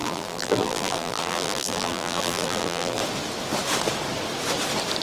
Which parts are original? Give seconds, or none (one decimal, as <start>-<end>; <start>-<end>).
3.0-5.0